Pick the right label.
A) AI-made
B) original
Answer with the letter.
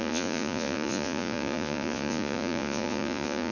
A